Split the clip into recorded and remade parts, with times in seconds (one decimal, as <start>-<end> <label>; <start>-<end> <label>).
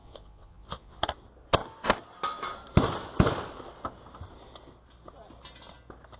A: 0.0-1.0 remade; 1.0-6.2 recorded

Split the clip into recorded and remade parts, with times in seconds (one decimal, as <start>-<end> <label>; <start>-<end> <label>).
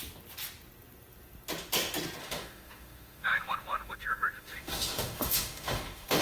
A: 0.0-2.2 recorded; 2.2-6.2 remade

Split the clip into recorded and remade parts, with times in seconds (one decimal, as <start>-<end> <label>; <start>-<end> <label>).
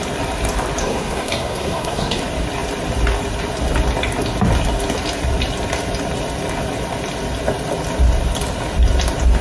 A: 0.0-0.8 recorded; 0.8-2.2 remade; 2.2-9.4 recorded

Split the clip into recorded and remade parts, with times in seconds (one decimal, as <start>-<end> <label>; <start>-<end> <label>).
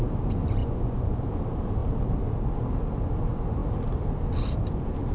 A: 0.0-0.6 recorded; 0.6-1.2 remade; 1.2-5.1 recorded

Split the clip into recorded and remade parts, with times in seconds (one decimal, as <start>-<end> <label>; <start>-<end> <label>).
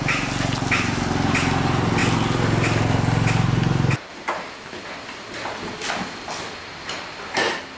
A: 0.0-7.8 recorded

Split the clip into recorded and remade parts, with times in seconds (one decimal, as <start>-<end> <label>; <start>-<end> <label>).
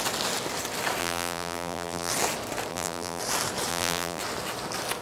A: 0.0-1.0 recorded; 1.0-2.1 remade; 2.1-2.7 recorded; 2.7-3.2 remade; 3.2-3.7 recorded; 3.7-4.2 remade; 4.2-5.0 recorded